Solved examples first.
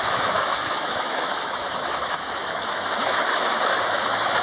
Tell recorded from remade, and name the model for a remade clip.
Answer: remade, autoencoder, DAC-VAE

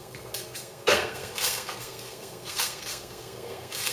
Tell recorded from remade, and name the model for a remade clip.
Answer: remade, codec, SNAC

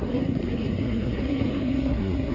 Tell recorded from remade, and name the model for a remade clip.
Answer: remade, codec, SNAC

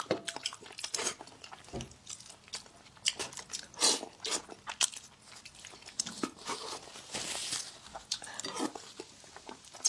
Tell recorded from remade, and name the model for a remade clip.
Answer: recorded